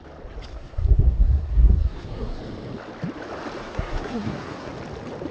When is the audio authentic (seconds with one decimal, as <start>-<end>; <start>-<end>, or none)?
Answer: 0.0-0.5; 2.4-3.6; 4.7-5.3